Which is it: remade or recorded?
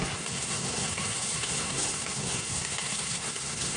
remade